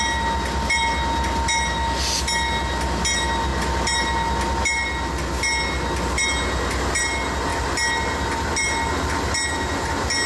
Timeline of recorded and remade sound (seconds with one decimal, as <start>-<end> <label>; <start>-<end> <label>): 0.0-10.3 recorded